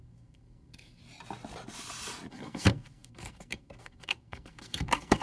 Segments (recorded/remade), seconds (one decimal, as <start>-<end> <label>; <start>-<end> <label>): 0.0-1.0 remade; 1.0-2.3 recorded; 2.3-5.2 remade